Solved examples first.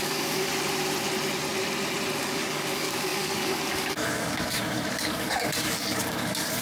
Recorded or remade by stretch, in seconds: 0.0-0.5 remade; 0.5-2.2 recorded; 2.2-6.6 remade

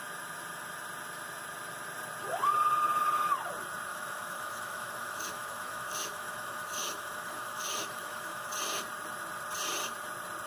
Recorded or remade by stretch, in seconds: 0.0-3.9 recorded; 3.9-8.5 remade; 8.5-10.5 recorded

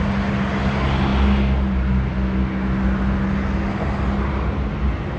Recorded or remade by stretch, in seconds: 0.0-5.2 recorded

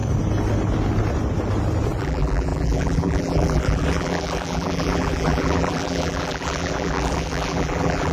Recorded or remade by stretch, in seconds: 0.0-2.0 recorded; 2.0-8.1 remade

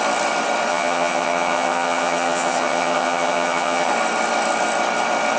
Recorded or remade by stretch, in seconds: 0.0-0.7 recorded; 0.7-3.9 remade; 3.9-5.4 recorded

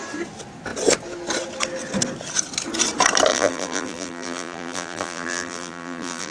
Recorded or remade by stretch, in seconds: 0.0-3.3 recorded; 3.3-6.3 remade

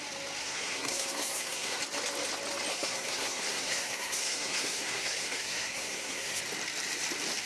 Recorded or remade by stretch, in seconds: 0.0-0.4 recorded; 0.4-1.8 remade; 1.8-2.7 recorded; 2.7-6.4 remade; 6.4-7.5 recorded

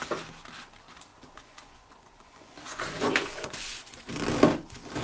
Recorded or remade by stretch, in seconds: 0.0-1.1 recorded; 1.1-4.1 remade; 4.1-5.0 recorded